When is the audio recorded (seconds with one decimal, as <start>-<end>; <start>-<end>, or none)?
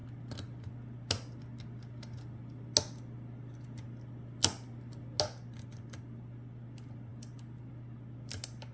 0.0-8.7